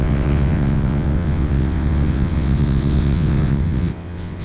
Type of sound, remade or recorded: remade